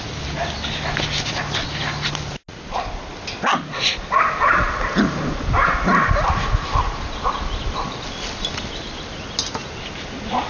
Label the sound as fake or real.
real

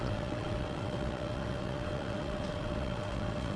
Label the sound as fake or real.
fake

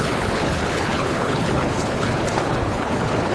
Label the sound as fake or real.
fake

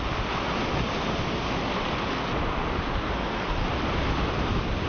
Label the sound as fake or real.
real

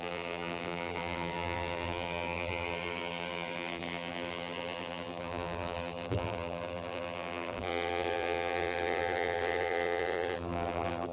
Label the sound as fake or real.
fake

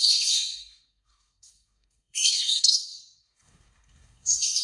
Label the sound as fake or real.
fake